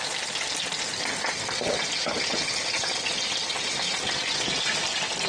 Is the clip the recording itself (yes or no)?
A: yes